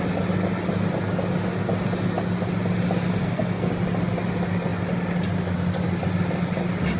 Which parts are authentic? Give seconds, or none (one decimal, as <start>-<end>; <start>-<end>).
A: 0.0-3.2; 3.7-7.0